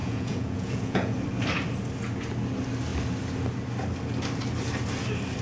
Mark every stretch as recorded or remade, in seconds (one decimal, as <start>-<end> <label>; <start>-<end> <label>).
0.0-1.1 remade; 1.1-5.4 recorded